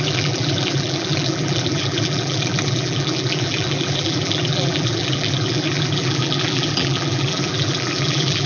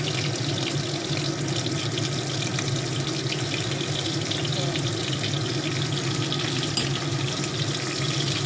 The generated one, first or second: first